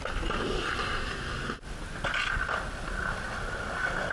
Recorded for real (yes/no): yes